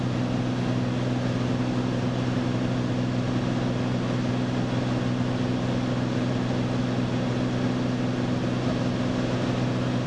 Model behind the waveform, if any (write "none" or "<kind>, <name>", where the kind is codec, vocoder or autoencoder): none